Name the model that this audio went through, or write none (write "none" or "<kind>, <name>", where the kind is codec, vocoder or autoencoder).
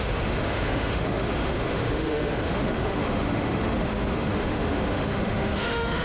autoencoder, DAC-VAE